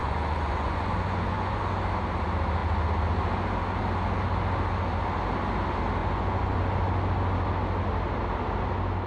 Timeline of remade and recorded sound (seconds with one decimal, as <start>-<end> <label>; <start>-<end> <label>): 0.0-1.6 remade; 1.6-6.0 recorded; 6.0-6.6 remade; 6.6-9.1 recorded